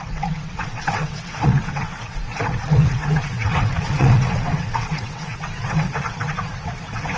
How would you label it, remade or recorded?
remade